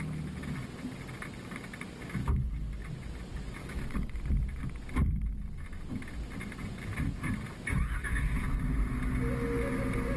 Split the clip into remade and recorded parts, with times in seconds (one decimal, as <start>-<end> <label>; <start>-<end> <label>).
0.0-2.2 recorded; 2.2-2.8 remade; 2.8-3.6 recorded; 3.6-4.2 remade; 4.2-10.2 recorded